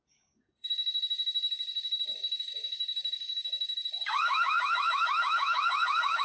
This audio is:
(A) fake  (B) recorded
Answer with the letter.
A